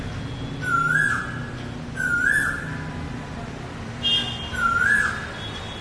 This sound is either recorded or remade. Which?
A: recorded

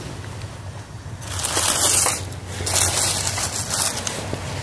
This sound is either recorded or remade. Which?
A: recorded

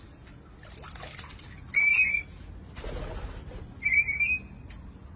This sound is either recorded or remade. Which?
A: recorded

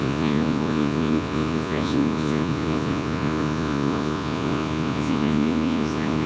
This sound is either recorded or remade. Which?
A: remade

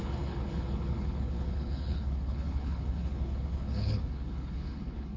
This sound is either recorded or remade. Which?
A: remade